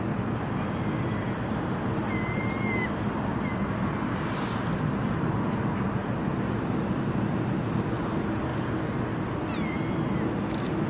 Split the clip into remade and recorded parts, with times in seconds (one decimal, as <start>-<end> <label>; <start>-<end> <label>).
0.0-10.9 recorded